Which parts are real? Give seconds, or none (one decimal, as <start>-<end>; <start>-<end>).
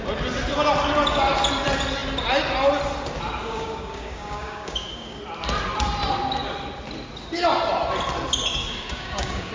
0.0-3.4; 5.2-8.6